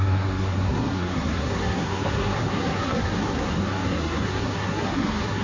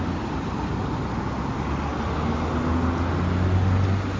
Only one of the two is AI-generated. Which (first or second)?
first